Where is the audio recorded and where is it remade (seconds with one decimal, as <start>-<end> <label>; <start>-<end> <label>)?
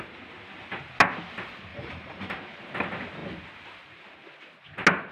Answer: 0.0-1.7 recorded; 1.7-2.4 remade; 2.4-5.1 recorded